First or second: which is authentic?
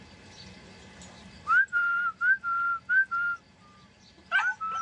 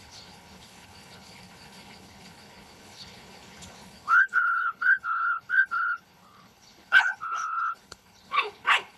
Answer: first